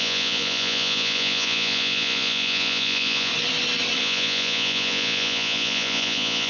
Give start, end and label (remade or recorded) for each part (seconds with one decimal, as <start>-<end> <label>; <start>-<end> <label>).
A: 0.0-3.3 remade; 3.3-4.0 recorded; 4.0-6.5 remade